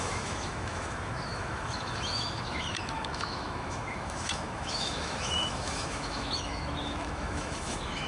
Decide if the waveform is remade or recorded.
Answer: remade